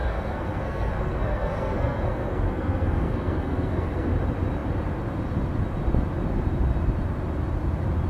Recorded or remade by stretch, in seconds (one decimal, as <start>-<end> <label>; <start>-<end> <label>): 0.0-4.1 remade; 4.1-8.1 recorded